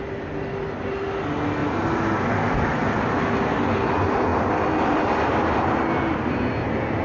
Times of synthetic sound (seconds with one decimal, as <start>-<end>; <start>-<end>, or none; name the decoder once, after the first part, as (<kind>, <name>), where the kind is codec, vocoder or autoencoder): none